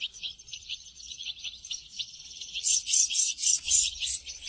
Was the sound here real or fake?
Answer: fake